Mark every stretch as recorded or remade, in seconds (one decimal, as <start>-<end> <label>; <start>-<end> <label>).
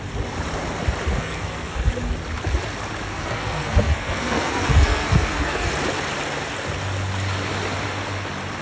0.0-1.1 recorded; 1.1-1.9 remade; 1.9-3.1 recorded; 3.1-5.7 remade; 5.7-8.6 recorded